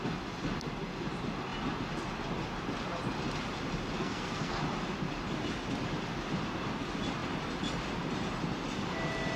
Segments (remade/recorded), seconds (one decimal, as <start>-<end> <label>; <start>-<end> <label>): 0.0-4.0 recorded; 4.0-4.6 remade; 4.6-9.4 recorded